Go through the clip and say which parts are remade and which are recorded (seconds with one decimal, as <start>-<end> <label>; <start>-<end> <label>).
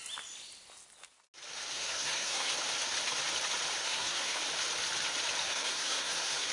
0.0-1.7 recorded; 1.7-2.5 remade; 2.5-3.8 recorded; 3.8-4.4 remade; 4.4-5.4 recorded; 5.4-6.5 remade